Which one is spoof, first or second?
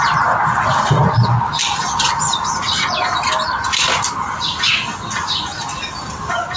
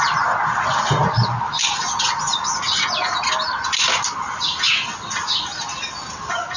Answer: first